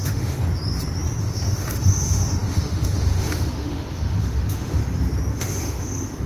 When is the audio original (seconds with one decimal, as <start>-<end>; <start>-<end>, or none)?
0.4-1.2; 4.8-5.3